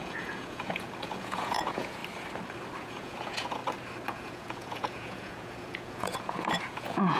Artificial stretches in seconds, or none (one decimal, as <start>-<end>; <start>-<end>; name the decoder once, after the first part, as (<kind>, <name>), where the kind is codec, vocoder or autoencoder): 0.0-2.0 (vocoder, Vocos); 2.8-3.6; 4.1-7.2